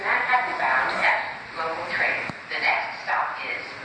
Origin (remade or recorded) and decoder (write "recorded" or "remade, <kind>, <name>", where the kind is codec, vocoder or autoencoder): recorded